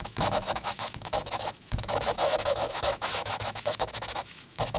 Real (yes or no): no